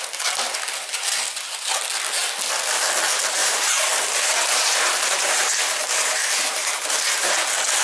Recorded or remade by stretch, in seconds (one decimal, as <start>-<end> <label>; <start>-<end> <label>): 0.0-3.4 recorded; 3.4-7.3 remade; 7.3-7.8 recorded